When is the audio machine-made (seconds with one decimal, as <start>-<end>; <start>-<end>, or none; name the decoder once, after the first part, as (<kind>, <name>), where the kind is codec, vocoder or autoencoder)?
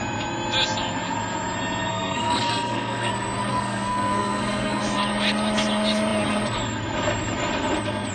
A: 1.9-3.1 (codec, SNAC); 3.5-4.8